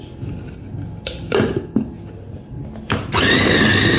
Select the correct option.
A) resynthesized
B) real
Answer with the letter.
B